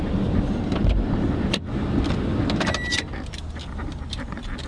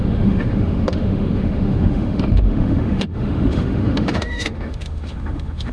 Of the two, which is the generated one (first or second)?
second